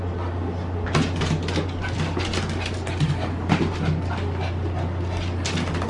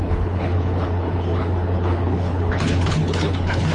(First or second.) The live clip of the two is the first